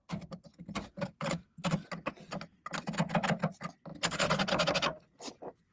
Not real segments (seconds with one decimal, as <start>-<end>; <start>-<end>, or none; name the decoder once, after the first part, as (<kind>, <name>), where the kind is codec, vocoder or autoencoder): 3.9-4.5 (vocoder, BigVGAN v2)